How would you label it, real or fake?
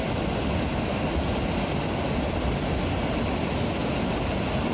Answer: real